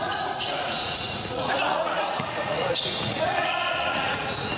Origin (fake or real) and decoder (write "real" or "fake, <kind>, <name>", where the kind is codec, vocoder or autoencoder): fake, vocoder, Vocos